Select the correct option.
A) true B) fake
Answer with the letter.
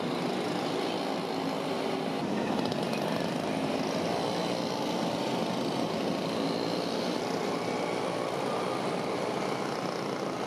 A